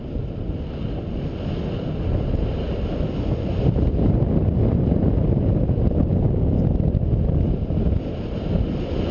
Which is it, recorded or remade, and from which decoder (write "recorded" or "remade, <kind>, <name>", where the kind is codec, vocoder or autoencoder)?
recorded